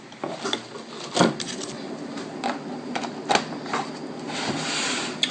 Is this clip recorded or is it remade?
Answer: recorded